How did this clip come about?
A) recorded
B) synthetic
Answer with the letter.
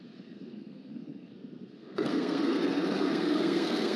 B